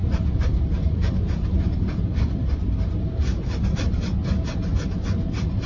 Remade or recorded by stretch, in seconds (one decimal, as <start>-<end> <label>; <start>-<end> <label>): 0.0-2.9 remade; 2.9-3.3 recorded; 3.3-4.0 remade; 4.0-5.7 recorded